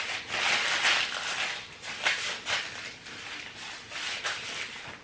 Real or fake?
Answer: real